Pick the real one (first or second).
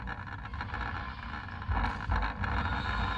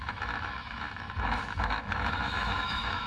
first